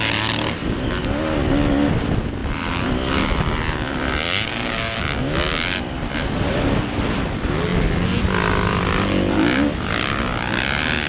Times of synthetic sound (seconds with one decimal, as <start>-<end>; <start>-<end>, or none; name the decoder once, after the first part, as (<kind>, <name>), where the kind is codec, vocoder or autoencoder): none